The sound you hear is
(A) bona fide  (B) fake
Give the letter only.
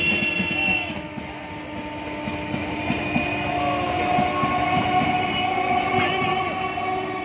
A